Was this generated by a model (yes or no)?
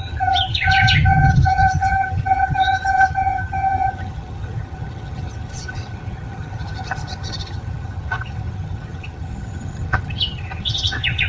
yes